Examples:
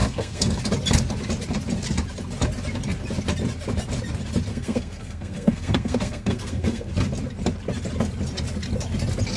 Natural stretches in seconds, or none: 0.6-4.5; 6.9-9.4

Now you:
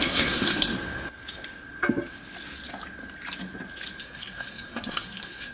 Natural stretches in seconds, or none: 0.7-4.0